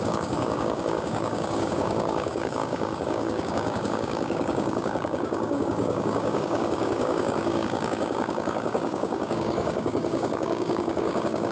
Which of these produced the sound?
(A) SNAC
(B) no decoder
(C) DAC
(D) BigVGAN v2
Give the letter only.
C